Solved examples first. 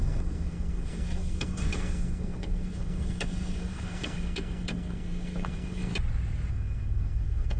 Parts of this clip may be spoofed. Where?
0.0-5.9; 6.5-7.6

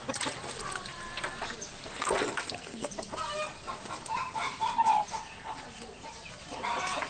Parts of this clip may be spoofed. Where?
1.8-2.9

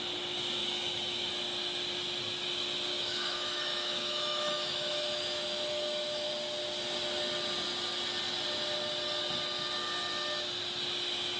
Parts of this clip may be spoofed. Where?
0.6-1.3; 2.9-6.3

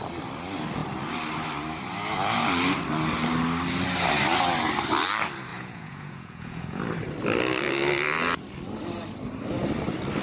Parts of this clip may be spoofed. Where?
5.5-6.8

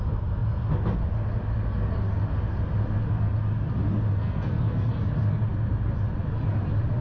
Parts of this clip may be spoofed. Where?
4.1-4.9

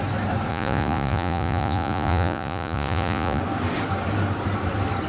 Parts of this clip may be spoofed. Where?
0.5-3.4